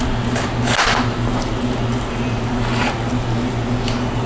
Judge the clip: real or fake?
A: real